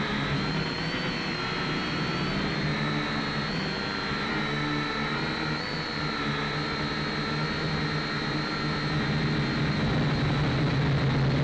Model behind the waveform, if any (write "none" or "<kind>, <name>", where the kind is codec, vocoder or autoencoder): none